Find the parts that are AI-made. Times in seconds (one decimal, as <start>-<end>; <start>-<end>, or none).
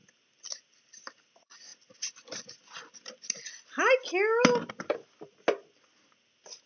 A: none